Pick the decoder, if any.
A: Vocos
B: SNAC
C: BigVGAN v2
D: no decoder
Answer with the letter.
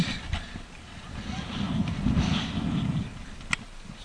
D